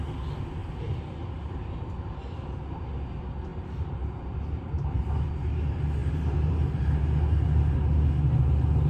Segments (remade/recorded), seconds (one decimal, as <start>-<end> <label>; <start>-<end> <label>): 0.0-0.6 recorded; 0.6-1.6 remade; 1.6-3.5 recorded; 3.5-5.0 remade; 5.0-6.0 recorded; 6.0-7.0 remade; 7.0-8.9 recorded